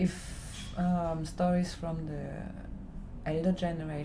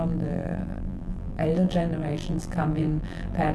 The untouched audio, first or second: first